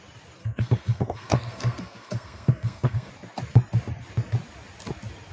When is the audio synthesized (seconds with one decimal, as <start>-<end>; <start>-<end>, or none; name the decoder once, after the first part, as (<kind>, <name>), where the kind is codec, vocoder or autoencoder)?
0.4-3.1 (codec, SNAC)